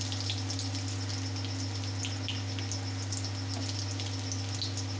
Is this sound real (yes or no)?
yes